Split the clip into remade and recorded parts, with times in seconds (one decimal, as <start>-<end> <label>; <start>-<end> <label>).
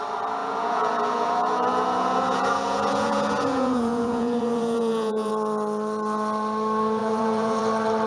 0.0-0.4 recorded; 0.4-5.3 remade; 5.3-7.0 recorded; 7.0-7.6 remade; 7.6-8.1 recorded